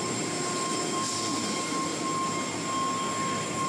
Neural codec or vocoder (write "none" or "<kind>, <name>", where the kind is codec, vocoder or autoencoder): none